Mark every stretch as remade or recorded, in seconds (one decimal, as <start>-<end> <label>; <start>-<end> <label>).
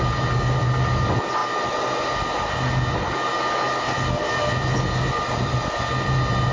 0.0-6.5 recorded